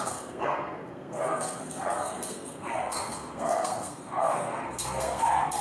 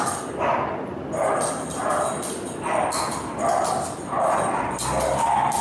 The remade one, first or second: first